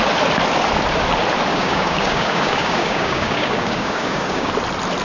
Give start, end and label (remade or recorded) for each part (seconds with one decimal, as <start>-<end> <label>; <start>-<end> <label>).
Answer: 0.0-1.5 recorded; 1.5-4.5 remade; 4.5-5.0 recorded